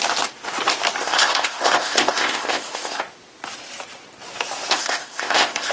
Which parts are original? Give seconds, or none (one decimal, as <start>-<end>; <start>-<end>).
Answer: 0.0-1.0; 3.0-4.7